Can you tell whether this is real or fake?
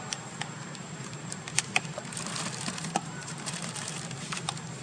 fake